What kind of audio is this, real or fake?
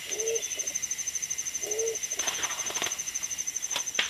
real